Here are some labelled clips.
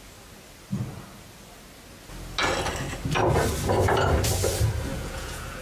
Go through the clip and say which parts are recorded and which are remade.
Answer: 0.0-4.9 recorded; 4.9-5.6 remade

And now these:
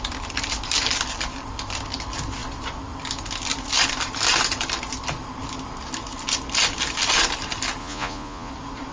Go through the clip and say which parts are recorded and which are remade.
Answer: 0.0-7.8 recorded; 7.8-8.5 remade; 8.5-8.9 recorded

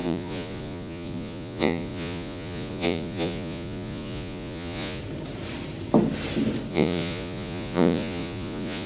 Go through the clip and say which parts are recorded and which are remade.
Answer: 0.0-5.0 remade; 5.0-6.7 recorded; 6.7-8.9 remade

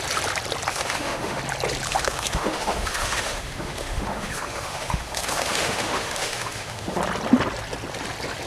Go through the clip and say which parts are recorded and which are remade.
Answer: 0.0-0.7 recorded; 0.7-1.4 remade; 1.4-1.9 recorded; 1.9-7.0 remade; 7.0-8.5 recorded

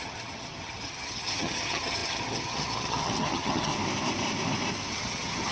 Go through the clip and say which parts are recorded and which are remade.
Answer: 0.0-3.7 remade; 3.7-4.9 recorded; 4.9-5.5 remade